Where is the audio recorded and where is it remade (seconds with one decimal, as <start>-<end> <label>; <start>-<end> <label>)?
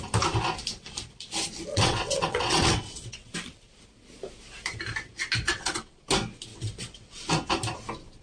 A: 0.0-1.7 recorded; 1.7-3.3 remade; 3.3-5.5 recorded; 5.5-6.0 remade; 6.0-6.5 recorded; 6.5-7.2 remade; 7.2-8.2 recorded